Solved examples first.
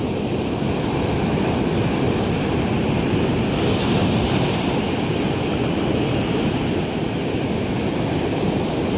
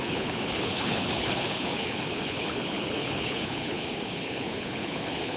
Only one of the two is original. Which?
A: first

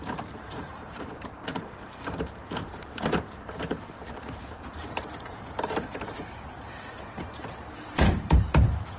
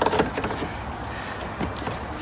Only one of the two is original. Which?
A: second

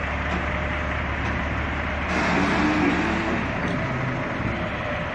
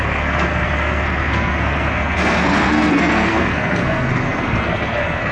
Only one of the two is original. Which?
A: first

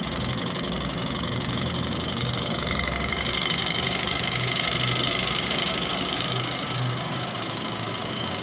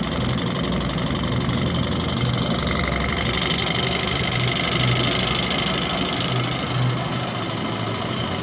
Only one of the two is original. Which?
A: second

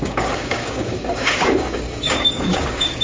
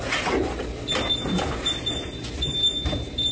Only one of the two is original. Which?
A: second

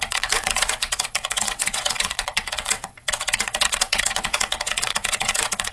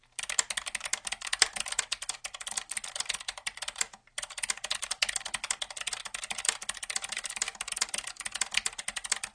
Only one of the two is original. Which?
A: second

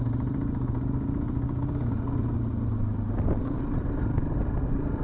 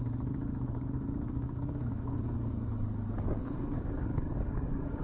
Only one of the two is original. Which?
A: first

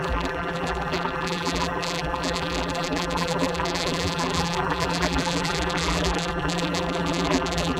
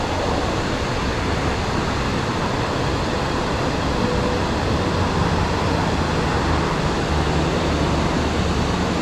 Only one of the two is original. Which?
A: second